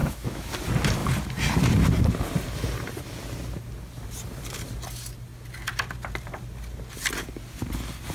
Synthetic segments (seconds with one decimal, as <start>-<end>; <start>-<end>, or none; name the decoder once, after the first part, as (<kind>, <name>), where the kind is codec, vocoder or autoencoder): 0.0-0.5 (autoencoder, DAC-VAE)